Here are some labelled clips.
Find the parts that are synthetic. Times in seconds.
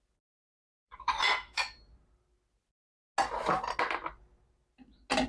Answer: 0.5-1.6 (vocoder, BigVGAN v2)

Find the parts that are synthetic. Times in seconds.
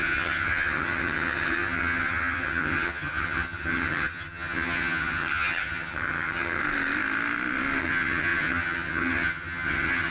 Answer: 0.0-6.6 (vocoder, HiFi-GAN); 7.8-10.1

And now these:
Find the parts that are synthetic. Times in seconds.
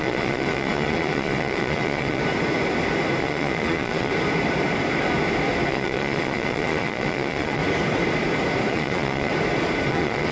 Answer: 0.0-2.2 (vocoder, Vocos); 3.2-4.1; 5.7-7.6; 8.7-9.3; 9.9-10.3